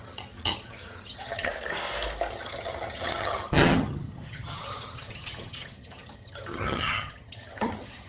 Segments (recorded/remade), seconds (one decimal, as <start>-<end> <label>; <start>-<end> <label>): 0.0-1.5 remade; 1.5-2.3 recorded; 2.3-8.1 remade